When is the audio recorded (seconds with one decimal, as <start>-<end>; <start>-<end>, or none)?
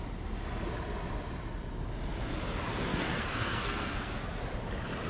0.0-2.9; 4.4-5.1